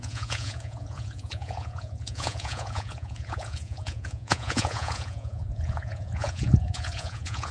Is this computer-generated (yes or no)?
yes